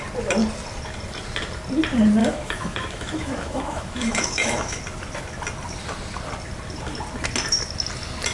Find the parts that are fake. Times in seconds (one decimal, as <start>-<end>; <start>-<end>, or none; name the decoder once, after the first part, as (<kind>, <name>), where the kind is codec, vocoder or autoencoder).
2.2-4.8 (autoencoder, DAC-VAE)